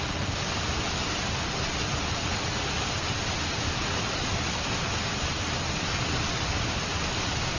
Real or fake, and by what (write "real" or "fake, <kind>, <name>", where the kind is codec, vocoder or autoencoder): real